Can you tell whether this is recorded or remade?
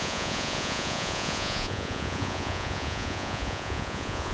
remade